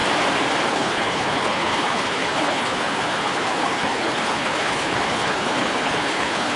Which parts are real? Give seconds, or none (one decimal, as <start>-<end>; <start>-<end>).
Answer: 0.0-0.7